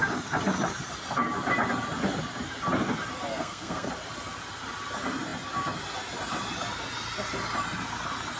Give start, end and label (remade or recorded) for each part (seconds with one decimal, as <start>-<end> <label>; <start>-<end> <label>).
0.0-3.3 recorded; 3.3-3.9 remade; 3.9-8.4 recorded